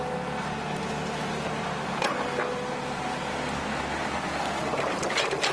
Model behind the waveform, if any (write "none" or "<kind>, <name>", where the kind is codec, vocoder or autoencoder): none